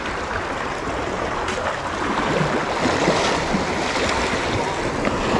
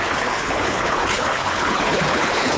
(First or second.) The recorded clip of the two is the first